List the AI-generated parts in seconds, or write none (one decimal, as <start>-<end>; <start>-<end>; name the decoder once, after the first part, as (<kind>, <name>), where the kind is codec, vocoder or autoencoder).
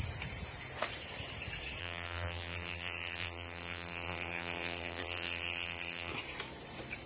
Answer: 1.8-6.1 (vocoder, BigVGAN v2)